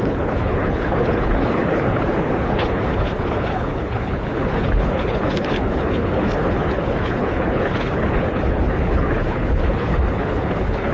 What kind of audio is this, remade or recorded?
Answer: remade